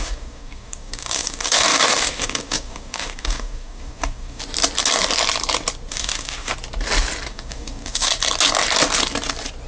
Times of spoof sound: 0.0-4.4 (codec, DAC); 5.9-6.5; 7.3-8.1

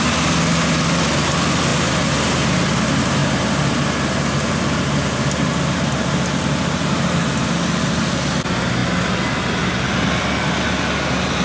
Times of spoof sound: none

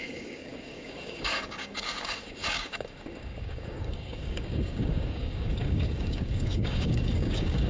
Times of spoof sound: 0.0-7.7 (codec, DAC)

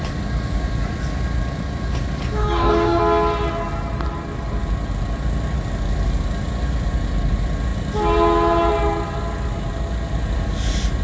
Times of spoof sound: 2.4-3.0 (codec, DAC)